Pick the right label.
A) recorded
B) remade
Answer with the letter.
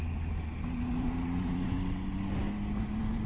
A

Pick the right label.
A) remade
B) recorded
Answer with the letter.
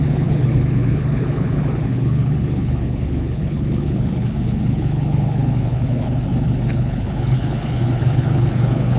A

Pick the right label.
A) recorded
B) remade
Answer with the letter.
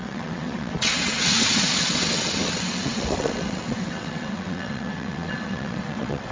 B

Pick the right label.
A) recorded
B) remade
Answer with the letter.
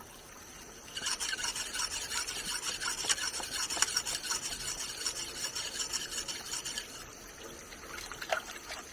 A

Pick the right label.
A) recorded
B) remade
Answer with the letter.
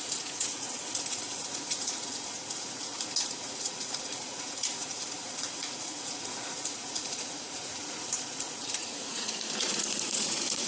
B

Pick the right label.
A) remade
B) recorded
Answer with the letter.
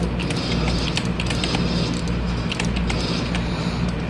B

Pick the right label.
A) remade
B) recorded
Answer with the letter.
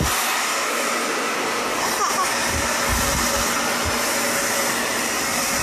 B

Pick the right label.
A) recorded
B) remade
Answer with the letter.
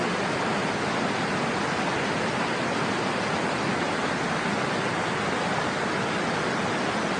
A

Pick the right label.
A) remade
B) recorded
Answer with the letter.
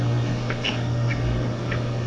A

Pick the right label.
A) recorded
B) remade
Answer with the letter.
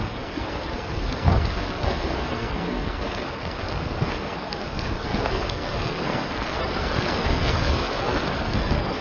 B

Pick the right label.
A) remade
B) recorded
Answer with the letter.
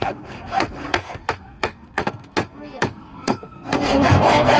A